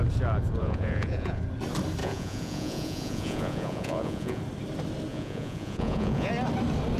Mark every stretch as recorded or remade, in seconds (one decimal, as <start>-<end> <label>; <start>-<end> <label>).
0.0-0.6 recorded; 0.6-1.4 remade; 1.4-2.0 recorded; 2.0-4.4 remade; 4.4-5.1 recorded; 5.1-6.3 remade; 6.3-7.0 recorded